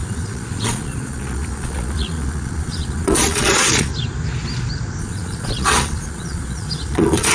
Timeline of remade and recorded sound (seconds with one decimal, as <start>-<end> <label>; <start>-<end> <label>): 0.0-3.9 remade; 3.9-5.0 recorded; 5.0-7.3 remade